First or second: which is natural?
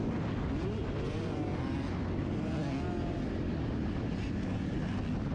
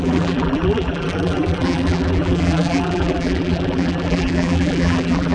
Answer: first